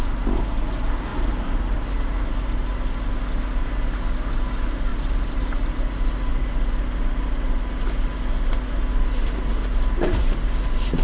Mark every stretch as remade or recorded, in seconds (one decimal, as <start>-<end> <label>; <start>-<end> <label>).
0.0-1.1 recorded; 1.1-1.8 remade; 1.8-4.9 recorded; 4.9-5.6 remade; 5.6-11.0 recorded